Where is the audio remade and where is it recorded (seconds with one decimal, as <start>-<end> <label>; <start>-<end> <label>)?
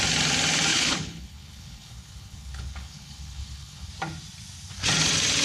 0.0-0.7 recorded; 0.7-3.9 remade; 3.9-5.4 recorded